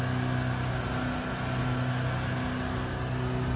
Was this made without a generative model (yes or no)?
yes